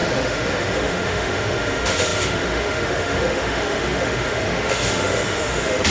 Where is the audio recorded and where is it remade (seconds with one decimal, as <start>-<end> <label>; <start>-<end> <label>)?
0.0-5.9 remade